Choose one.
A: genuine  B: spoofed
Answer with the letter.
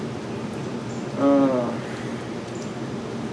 A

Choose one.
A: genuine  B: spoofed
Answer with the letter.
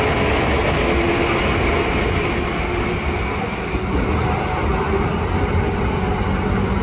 A